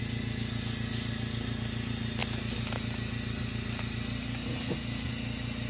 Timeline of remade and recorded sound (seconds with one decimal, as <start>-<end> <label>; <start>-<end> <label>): 0.0-5.7 recorded